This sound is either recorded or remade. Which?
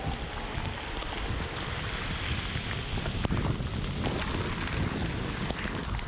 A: recorded